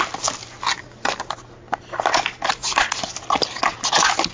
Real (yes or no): yes